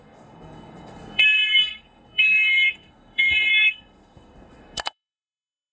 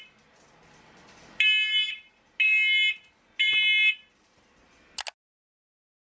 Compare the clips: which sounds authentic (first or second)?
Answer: second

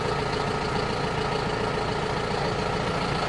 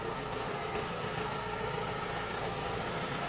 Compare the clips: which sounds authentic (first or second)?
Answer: first